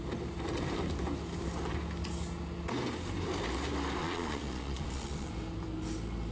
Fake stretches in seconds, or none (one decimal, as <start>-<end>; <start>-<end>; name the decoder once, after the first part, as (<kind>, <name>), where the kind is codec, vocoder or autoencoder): 4.0-5.3 (vocoder, Vocos)